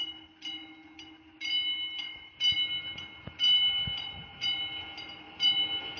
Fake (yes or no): no